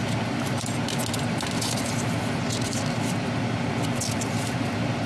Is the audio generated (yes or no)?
no